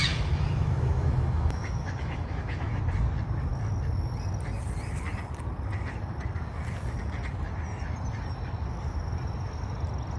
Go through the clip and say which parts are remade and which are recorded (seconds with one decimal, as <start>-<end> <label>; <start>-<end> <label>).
0.0-2.8 remade; 2.8-10.2 recorded